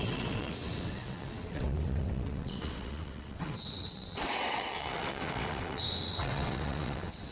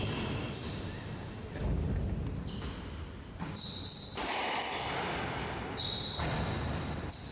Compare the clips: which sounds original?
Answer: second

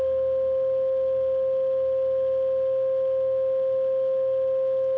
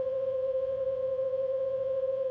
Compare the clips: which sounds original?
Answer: first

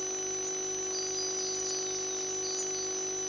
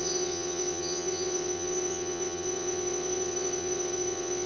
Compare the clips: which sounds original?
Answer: first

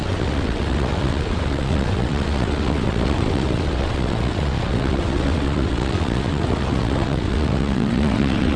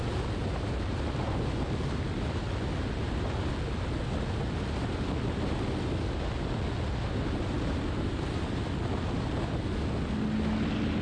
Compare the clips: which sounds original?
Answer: second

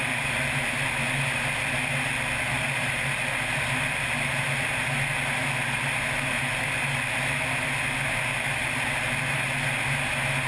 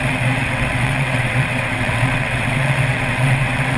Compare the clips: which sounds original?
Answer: first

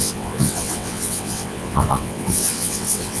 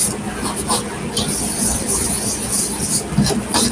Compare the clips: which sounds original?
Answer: second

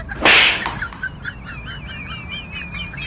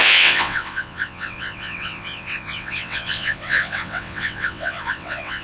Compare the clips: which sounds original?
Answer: first